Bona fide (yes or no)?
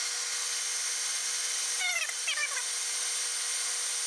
yes